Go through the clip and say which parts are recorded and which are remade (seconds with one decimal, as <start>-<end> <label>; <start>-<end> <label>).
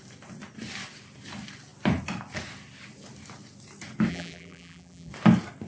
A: 0.0-4.1 recorded; 4.1-5.1 remade; 5.1-5.7 recorded